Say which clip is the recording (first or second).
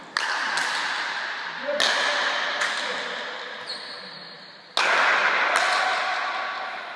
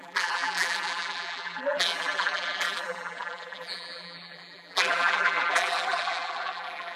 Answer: first